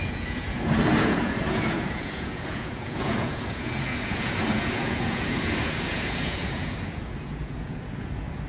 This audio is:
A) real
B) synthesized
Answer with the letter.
B